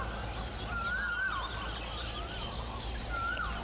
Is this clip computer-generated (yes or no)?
no